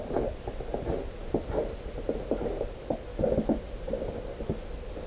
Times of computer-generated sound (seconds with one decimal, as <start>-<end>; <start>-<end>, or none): none